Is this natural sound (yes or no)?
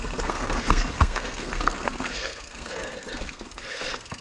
no